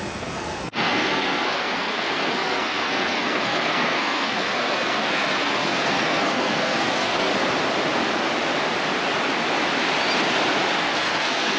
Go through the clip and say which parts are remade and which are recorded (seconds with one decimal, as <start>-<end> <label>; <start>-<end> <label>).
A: 0.0-7.3 remade; 7.3-10.8 recorded; 10.8-11.6 remade